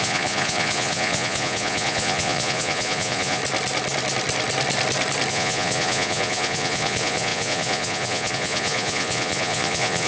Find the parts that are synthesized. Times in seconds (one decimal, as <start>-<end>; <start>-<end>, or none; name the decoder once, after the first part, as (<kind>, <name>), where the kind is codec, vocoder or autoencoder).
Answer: 0.0-3.4 (vocoder, Vocos); 5.3-10.1